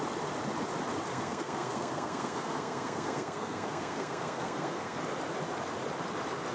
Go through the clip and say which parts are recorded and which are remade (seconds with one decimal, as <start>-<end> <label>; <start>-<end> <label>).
0.0-1.1 recorded; 1.1-5.0 remade; 5.0-6.5 recorded